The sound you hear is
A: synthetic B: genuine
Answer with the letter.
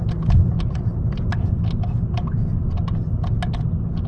B